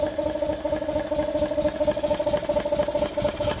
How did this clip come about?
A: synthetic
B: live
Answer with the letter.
B